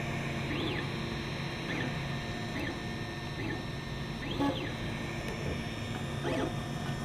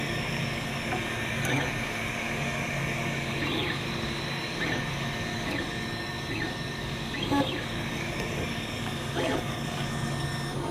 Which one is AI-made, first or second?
second